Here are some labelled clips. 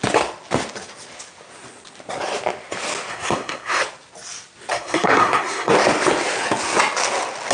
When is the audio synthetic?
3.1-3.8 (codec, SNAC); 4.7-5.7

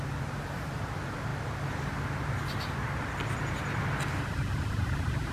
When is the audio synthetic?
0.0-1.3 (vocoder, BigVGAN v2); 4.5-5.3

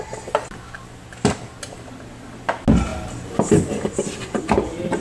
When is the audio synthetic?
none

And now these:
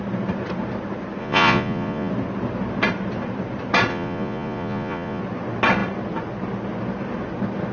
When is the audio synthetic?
1.2-2.1 (vocoder, Vocos); 3.9-5.2

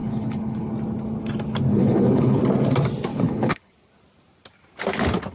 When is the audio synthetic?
0.0-0.7 (codec, HILCodec); 1.7-2.4; 3.1-3.7

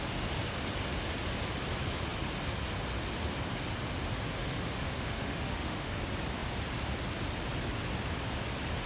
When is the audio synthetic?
4.4-6.0 (autoencoder, DAC-VAE)

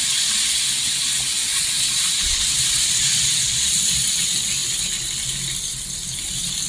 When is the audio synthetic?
1.4-3.8 (vocoder, Vocos)